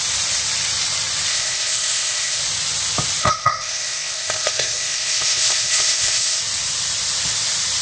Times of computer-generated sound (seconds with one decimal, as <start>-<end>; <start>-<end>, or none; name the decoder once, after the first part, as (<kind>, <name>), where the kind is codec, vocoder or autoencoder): 1.3-2.4 (codec, ZipCodec); 3.2-6.4